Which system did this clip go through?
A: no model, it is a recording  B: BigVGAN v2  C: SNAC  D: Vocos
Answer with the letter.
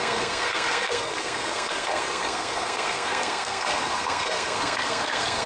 C